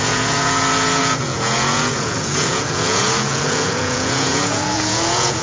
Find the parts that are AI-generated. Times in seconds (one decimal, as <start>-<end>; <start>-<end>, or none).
0.0-5.4